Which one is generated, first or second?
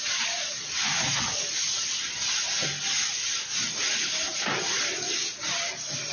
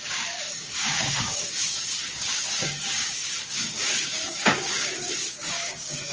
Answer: second